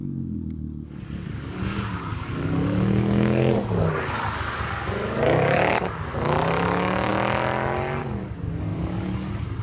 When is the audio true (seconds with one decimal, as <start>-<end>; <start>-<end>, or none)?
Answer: 7.1-8.0